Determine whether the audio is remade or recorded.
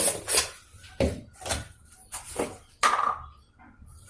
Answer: recorded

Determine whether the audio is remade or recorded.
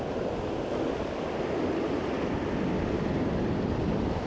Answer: recorded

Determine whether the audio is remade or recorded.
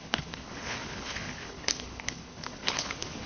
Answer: remade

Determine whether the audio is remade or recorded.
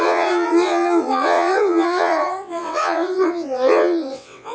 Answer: remade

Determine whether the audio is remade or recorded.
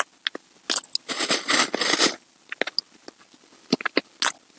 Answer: recorded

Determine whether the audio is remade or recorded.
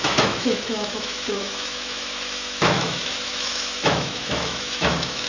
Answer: remade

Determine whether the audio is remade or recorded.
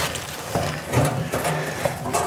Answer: recorded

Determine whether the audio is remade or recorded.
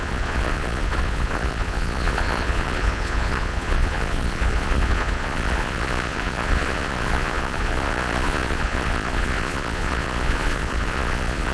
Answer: remade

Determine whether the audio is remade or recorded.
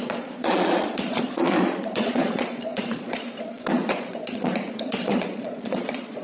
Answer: remade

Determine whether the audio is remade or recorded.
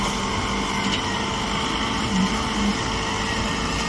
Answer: recorded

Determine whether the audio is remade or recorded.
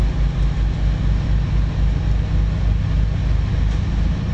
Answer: recorded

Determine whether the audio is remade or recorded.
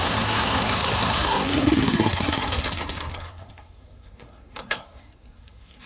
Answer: remade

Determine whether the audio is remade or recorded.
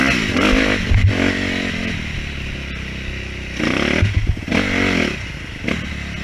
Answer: recorded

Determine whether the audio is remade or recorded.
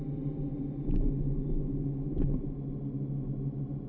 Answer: recorded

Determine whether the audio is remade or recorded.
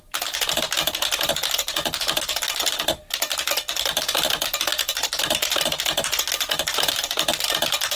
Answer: recorded